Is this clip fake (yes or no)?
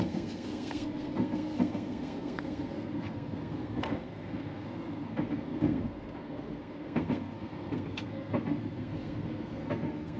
yes